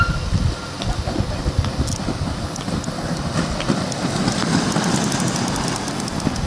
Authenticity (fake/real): real